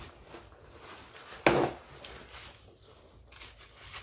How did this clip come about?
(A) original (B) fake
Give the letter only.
A